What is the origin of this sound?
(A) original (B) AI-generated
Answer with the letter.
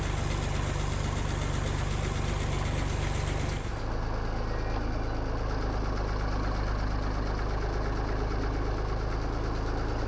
A